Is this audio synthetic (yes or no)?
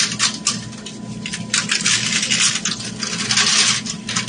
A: no